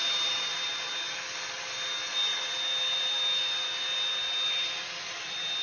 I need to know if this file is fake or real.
real